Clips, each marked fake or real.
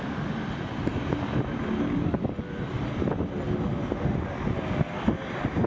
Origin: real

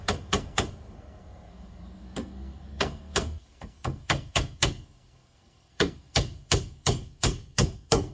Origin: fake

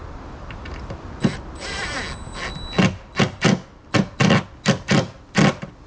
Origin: real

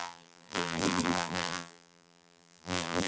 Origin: fake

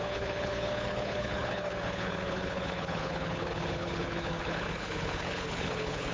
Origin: fake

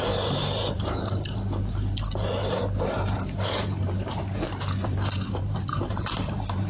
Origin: fake